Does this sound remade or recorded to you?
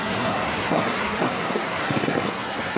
remade